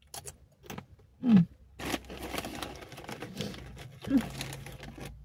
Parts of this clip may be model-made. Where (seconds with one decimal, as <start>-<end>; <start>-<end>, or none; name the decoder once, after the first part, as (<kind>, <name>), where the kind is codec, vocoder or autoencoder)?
none